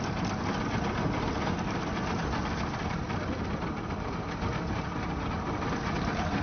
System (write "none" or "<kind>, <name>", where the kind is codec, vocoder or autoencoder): none